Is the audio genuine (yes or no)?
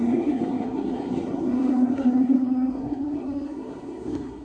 no